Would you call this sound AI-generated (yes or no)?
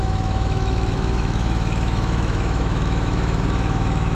yes